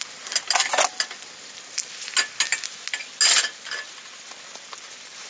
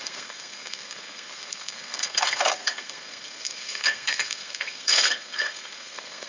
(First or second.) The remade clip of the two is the second